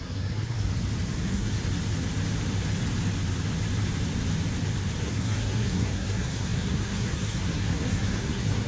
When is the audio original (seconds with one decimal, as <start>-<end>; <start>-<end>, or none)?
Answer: 0.7-1.2; 1.6-5.0